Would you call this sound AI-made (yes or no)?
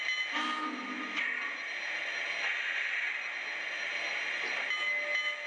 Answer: no